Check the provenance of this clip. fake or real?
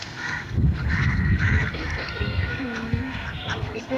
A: fake